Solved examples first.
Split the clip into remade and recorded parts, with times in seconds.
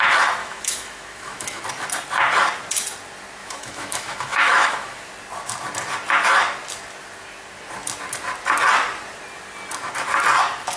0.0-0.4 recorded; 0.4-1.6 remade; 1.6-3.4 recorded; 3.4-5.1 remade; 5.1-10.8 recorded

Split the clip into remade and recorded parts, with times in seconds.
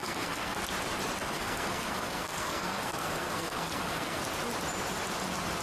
0.0-0.6 remade; 0.6-1.2 recorded; 1.2-4.2 remade; 4.2-5.6 recorded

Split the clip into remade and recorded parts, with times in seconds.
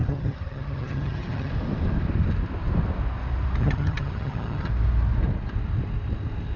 0.0-1.5 remade; 1.5-3.6 recorded; 3.6-4.7 remade; 4.7-6.6 recorded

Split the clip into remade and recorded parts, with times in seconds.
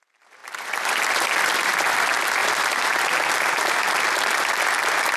0.0-0.4 recorded; 0.4-1.9 remade; 1.9-5.2 recorded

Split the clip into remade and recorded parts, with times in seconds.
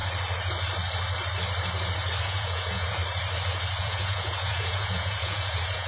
0.0-2.2 recorded; 2.2-3.0 remade; 3.0-3.8 recorded; 3.8-5.9 remade